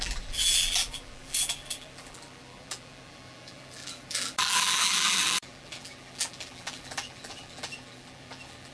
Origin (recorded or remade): remade